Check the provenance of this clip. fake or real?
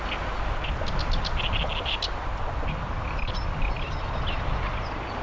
real